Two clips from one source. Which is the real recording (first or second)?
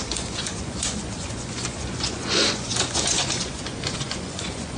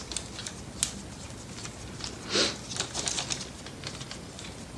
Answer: second